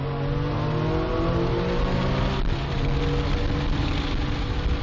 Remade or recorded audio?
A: recorded